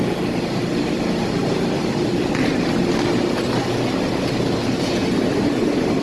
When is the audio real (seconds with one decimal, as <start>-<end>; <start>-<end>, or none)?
0.0-6.0